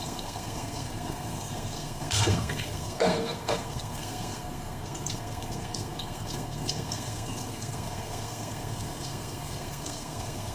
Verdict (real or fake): fake